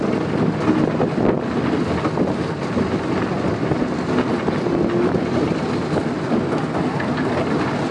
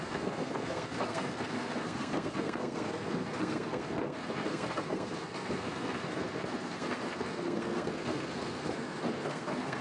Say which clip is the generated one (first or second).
second